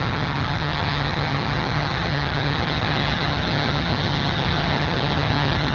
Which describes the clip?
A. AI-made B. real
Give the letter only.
A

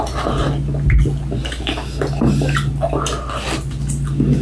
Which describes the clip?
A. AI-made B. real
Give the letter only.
B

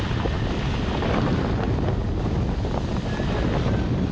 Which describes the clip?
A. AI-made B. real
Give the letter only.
B